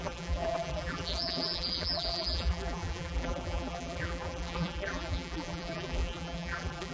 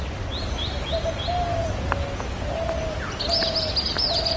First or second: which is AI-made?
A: first